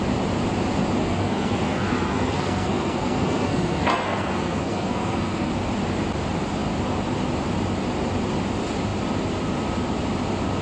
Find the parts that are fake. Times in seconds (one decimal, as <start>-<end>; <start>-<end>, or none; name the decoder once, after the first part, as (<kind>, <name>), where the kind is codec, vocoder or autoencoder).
1.0-5.5 (codec, SNAC)